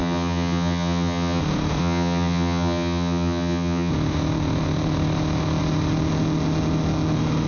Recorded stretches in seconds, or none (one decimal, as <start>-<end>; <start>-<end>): 1.4-1.8; 3.9-7.5